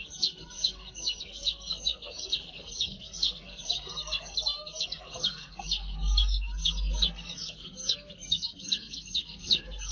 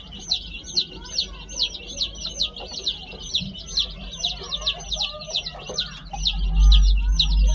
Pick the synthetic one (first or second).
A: first